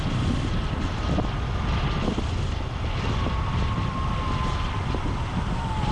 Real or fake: fake